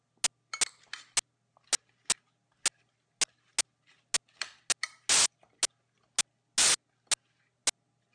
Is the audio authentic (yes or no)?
yes